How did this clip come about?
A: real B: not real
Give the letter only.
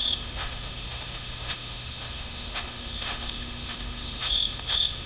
B